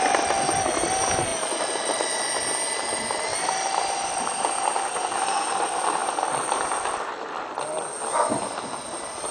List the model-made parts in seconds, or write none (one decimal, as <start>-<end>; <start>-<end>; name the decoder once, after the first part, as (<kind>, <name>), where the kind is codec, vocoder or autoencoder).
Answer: 3.3-4.2 (vocoder, BigVGAN v2); 6.0-6.6

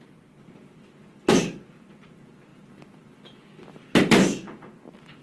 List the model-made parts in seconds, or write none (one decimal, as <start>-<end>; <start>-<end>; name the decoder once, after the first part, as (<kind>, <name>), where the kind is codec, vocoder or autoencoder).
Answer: none

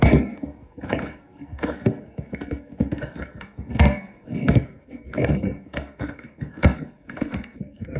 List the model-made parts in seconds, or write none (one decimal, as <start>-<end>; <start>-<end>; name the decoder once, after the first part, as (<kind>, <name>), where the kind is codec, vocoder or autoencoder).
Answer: 0.0-8.0 (codec, SNAC)

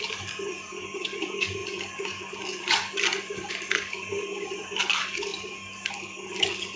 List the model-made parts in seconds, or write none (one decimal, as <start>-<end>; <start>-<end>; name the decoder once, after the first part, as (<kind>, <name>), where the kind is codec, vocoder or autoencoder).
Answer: 0.0-6.8 (codec, DAC)

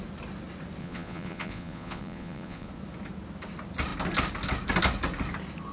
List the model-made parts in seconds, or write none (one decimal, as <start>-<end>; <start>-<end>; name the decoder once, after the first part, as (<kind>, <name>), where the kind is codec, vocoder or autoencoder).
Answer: 0.8-2.7 (vocoder, Vocos)

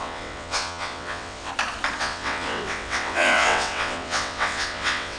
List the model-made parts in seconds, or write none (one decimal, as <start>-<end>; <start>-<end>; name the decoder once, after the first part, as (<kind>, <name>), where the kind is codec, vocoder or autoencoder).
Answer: 0.0-1.5 (vocoder, WaveNeXt); 2.0-5.2